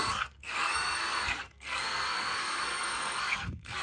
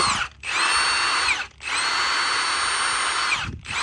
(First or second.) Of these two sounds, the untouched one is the second